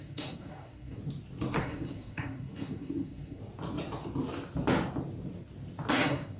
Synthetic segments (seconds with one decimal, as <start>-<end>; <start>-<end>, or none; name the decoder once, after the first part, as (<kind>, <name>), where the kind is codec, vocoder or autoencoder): 0.0-1.0 (codec, SNAC); 1.6-3.4; 5.9-6.4